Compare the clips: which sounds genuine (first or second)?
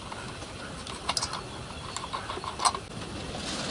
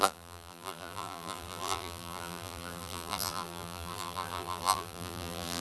first